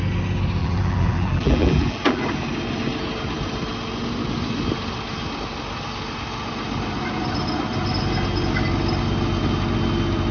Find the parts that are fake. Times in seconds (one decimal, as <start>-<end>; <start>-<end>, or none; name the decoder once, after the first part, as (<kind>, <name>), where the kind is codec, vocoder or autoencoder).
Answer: 0.6-2.2 (vocoder, BigVGAN v2)